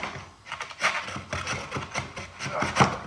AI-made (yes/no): no